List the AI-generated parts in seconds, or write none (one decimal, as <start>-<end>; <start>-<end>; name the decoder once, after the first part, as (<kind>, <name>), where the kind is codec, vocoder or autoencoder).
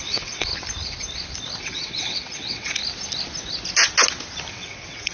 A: 0.0-0.5 (vocoder, WaveNeXt); 1.6-2.8; 4.5-5.1